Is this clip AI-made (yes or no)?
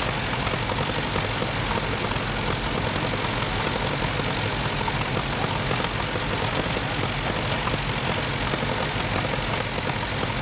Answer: no